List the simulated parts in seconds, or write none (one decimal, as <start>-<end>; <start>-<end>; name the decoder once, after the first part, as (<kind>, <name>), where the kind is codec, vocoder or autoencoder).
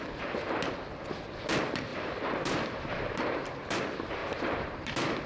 1.9-3.8 (vocoder, BigVGAN v2); 4.2-5.3